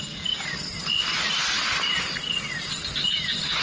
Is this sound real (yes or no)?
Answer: yes